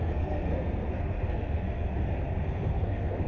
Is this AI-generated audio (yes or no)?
yes